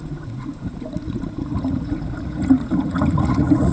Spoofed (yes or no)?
yes